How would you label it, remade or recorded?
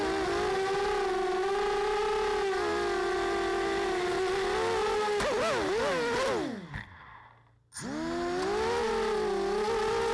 recorded